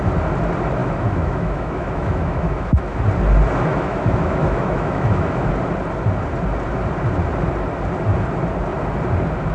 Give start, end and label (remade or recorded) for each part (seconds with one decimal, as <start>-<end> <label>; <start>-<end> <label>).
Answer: 0.0-0.8 recorded; 0.8-3.0 remade; 3.0-3.7 recorded; 3.7-5.5 remade; 5.5-9.5 recorded